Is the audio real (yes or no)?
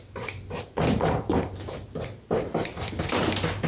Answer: yes